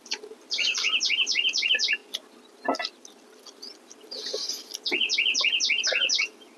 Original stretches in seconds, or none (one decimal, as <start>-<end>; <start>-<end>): 2.0-5.8